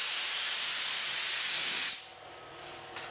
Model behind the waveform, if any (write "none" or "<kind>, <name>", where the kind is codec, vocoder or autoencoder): none